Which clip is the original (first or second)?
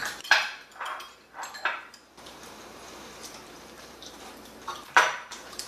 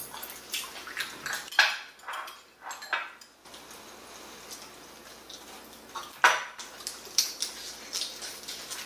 second